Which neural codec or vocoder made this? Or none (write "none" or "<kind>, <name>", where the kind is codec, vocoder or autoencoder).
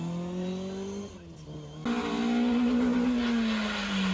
none